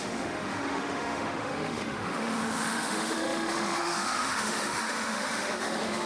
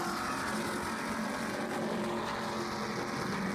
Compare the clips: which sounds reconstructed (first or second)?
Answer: first